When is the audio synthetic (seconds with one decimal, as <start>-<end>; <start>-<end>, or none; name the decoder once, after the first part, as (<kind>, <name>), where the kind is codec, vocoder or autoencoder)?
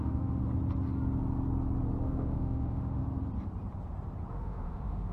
0.0-0.4 (autoencoder, DAC-VAE); 2.0-3.0; 4.3-5.1